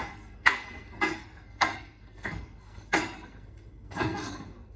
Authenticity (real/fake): fake